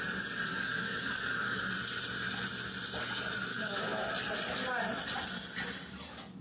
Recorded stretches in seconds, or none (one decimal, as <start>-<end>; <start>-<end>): 0.0-0.5; 1.6-3.5; 4.1-6.4